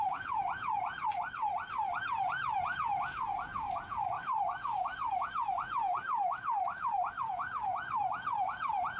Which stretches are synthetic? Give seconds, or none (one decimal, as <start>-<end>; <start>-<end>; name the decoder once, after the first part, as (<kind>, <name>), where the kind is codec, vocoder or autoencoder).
0.0-1.0 (vocoder, Vocos); 2.0-9.0